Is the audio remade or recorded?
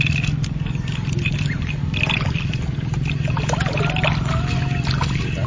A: recorded